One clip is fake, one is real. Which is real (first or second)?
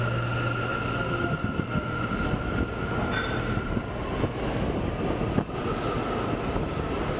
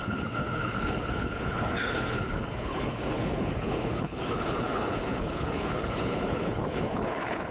first